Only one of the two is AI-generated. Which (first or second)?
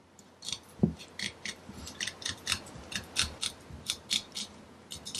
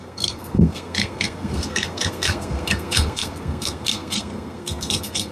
second